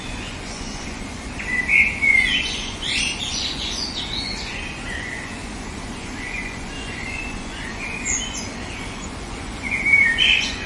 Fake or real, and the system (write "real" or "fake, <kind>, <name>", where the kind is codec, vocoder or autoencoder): fake, vocoder, Vocos